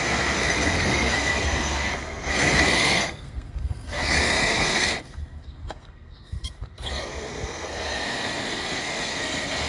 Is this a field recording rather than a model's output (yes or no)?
no